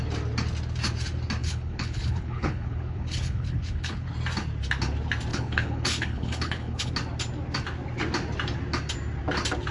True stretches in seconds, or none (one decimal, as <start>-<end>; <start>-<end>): 0.0-1.4; 4.1-5.3; 6.9-9.7

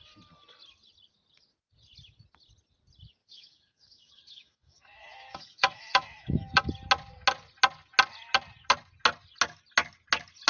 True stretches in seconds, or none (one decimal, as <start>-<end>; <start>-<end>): 0.0-3.2; 6.7-10.5

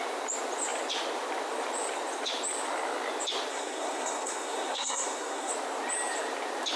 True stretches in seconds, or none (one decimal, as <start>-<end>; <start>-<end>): 0.0-3.5; 5.5-6.8

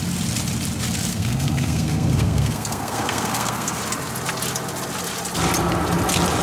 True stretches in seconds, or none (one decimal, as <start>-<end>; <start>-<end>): 0.0-1.1; 3.8-6.4